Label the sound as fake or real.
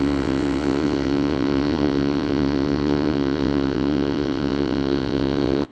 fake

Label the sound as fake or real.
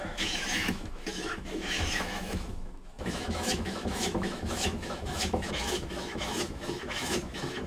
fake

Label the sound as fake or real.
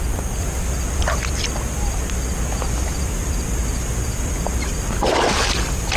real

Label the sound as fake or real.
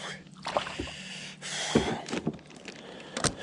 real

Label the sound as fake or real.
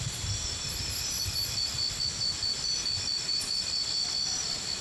real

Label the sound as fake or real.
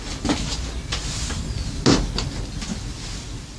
real